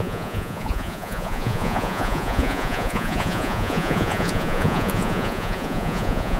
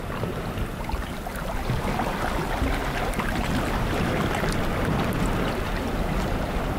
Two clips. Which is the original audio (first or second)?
second